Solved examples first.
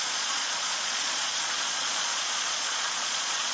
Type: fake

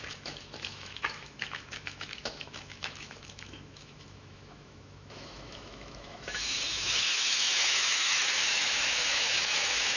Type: fake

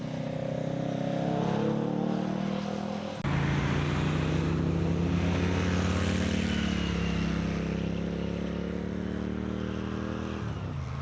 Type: real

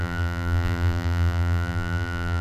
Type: fake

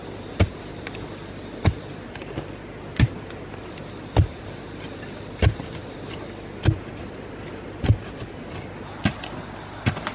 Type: real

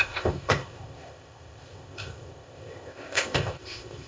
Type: fake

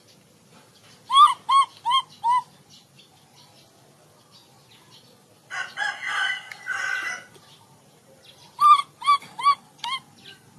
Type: real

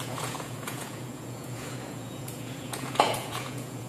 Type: fake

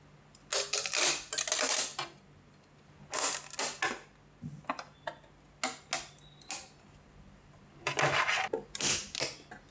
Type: real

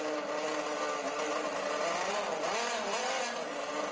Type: real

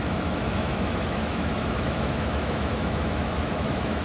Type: fake